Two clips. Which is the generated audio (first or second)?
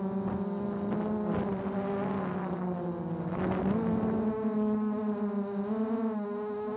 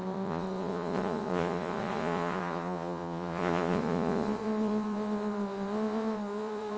second